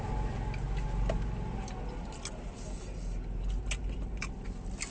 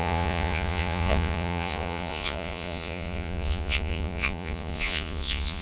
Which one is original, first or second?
first